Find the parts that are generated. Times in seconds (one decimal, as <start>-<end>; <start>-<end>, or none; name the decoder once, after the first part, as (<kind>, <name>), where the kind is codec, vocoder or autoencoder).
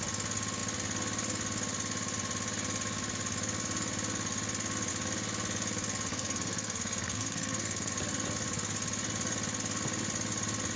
6.1-7.9 (codec, SNAC)